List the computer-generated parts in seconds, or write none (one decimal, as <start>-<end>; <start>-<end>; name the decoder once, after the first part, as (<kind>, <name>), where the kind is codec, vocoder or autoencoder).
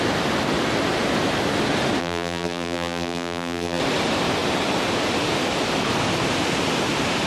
2.0-3.8 (vocoder, BigVGAN v2)